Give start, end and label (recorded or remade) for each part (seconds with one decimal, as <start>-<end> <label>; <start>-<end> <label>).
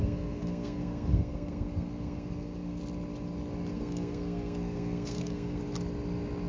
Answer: 0.0-2.8 remade; 2.8-3.7 recorded; 3.7-5.6 remade; 5.6-6.5 recorded